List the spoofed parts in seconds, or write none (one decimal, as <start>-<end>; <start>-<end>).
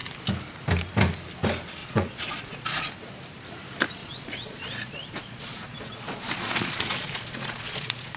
1.8-2.9; 4.0-8.2